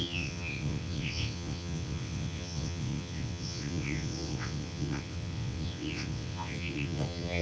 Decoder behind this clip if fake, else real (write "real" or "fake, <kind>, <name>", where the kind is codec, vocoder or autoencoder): fake, vocoder, WaveNeXt